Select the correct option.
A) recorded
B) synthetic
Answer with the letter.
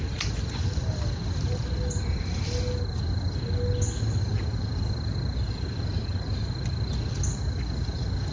A